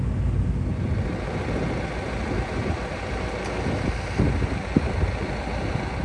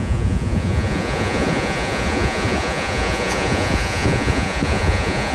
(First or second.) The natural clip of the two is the first